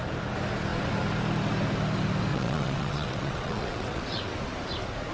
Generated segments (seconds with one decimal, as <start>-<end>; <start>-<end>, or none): 2.3-4.4